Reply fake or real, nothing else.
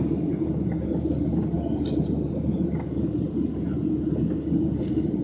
real